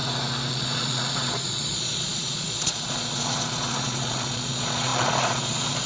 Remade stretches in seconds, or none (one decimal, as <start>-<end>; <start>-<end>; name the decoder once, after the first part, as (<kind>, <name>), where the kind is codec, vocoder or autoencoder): 0.5-5.9 (vocoder, Vocos)